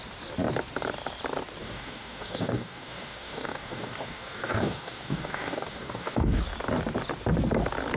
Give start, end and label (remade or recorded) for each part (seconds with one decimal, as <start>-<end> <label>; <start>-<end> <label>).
0.0-1.6 recorded; 1.6-6.4 remade; 6.4-8.0 recorded

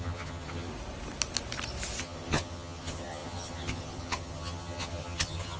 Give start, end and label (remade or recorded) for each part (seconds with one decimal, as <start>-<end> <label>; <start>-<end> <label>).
0.0-0.7 remade; 0.7-2.0 recorded; 2.0-5.6 remade

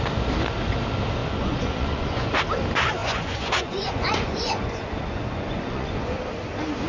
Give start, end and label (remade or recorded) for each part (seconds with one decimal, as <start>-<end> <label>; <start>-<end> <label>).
0.0-1.2 recorded; 1.2-2.4 remade; 2.4-3.0 recorded; 3.0-6.2 remade; 6.2-6.9 recorded

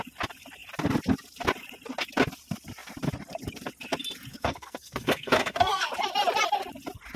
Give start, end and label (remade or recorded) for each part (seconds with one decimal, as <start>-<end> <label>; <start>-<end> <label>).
0.0-4.3 recorded; 4.3-5.9 remade; 5.9-7.2 recorded